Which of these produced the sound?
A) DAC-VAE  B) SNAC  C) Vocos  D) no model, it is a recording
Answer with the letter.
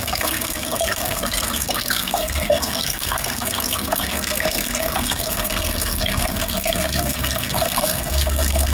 B